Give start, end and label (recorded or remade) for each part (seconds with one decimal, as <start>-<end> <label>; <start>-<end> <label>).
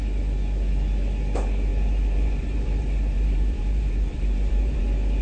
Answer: 0.0-1.7 recorded; 1.7-4.8 remade; 4.8-5.2 recorded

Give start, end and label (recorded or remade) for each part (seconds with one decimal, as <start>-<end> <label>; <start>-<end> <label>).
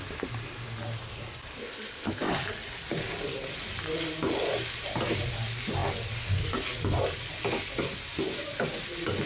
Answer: 0.0-1.6 recorded; 1.6-2.3 remade; 2.3-9.3 recorded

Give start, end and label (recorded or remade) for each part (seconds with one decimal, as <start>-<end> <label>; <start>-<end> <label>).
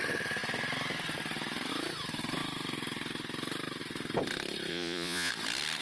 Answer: 0.0-4.7 recorded; 4.7-5.3 remade; 5.3-5.8 recorded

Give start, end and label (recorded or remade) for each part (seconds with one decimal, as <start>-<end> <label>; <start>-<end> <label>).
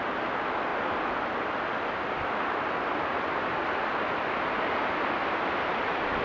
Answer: 0.0-6.2 recorded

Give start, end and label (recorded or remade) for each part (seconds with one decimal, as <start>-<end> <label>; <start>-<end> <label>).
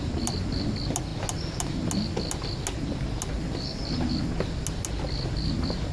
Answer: 0.0-5.9 recorded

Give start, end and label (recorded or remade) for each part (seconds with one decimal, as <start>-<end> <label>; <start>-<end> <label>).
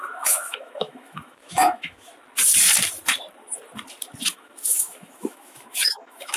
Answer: 0.0-2.1 remade; 2.1-4.3 recorded; 4.3-6.4 remade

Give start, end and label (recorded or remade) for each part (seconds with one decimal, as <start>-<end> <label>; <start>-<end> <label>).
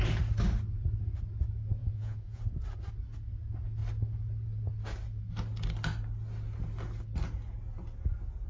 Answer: 0.0-1.8 recorded; 1.8-2.4 remade; 2.4-8.5 recorded